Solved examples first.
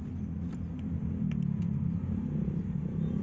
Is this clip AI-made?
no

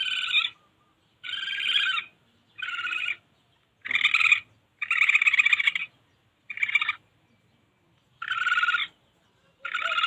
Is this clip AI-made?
no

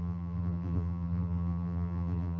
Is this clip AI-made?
yes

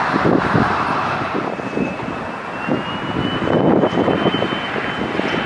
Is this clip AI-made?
no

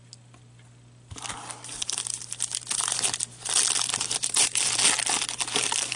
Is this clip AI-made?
no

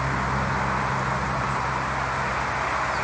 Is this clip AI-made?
no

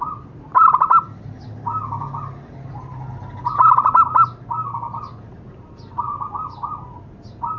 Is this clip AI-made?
no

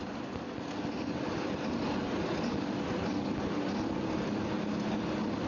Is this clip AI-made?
no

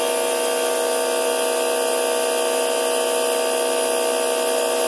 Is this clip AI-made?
no